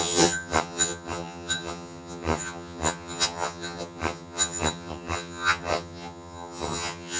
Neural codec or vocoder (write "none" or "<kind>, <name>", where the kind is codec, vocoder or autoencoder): vocoder, HiFi-GAN